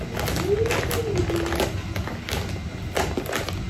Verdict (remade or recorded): recorded